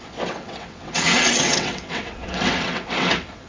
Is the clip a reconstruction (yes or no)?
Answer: yes